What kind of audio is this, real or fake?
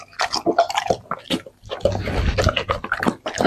real